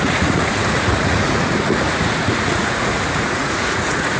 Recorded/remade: remade